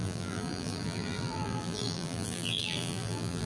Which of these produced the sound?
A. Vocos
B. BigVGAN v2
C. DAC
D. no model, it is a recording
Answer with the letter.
B